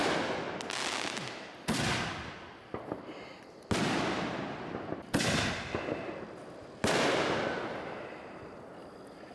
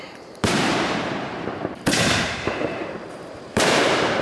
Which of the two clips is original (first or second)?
first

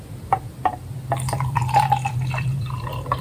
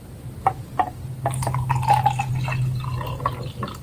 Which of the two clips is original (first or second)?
second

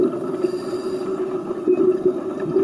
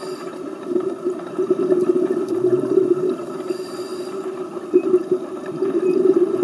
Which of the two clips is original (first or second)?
first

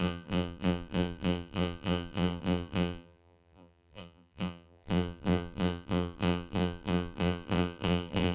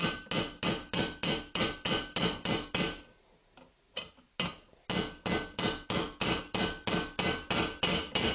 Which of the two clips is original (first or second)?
second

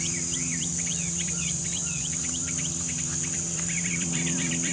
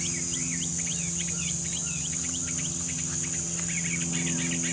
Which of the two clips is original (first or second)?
second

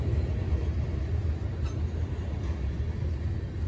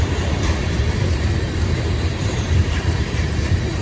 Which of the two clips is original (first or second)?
first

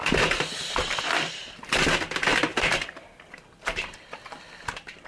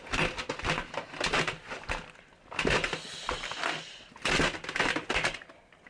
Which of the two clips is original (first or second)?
second